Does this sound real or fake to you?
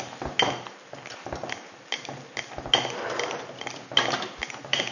real